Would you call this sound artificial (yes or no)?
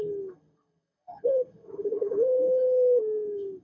yes